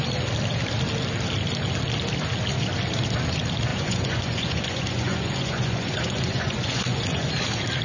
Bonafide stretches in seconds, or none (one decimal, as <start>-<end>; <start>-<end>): 0.0-3.7; 7.3-7.8